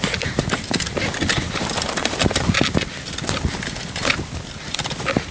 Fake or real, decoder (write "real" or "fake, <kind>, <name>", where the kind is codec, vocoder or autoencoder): real